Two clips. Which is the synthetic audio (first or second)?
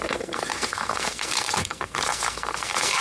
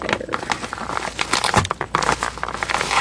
first